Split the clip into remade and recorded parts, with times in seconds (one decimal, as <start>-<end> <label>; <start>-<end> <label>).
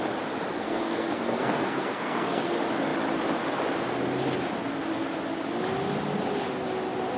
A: 0.0-0.5 recorded; 0.5-2.5 remade; 2.5-7.2 recorded